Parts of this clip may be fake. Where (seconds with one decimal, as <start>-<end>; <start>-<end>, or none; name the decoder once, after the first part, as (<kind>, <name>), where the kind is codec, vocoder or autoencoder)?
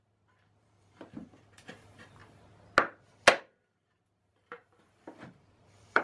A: 0.0-2.2 (vocoder, BigVGAN v2); 3.4-6.0